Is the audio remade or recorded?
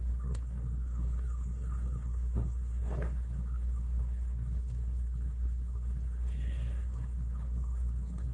remade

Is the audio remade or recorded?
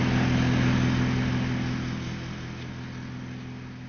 recorded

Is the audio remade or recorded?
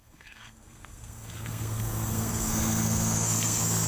remade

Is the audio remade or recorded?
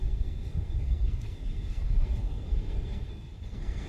remade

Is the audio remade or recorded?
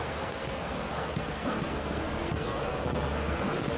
remade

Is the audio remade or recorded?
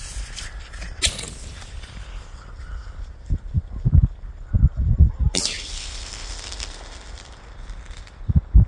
recorded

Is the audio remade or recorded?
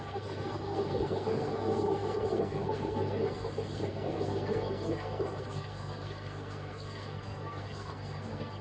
remade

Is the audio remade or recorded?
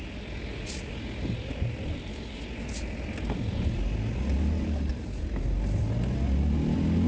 recorded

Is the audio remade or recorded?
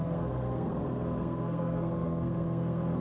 remade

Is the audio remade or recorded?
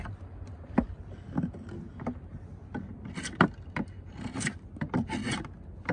recorded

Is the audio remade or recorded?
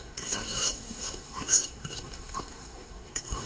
remade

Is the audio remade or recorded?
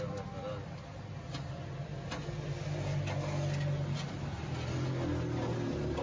recorded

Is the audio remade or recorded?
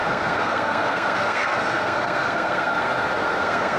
remade